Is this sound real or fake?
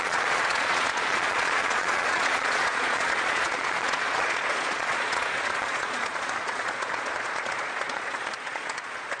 fake